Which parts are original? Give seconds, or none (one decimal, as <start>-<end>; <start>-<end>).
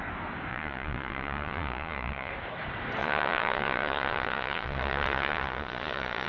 0.0-0.5; 2.3-3.0